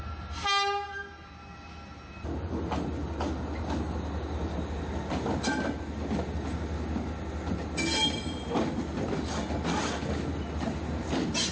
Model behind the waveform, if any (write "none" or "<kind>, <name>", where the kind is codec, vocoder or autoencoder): none